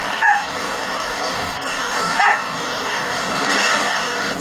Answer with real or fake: fake